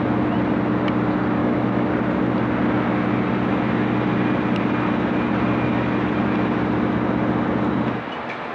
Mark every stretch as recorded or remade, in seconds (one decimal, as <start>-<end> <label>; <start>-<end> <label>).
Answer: 0.0-1.4 recorded; 1.4-1.9 remade; 1.9-8.5 recorded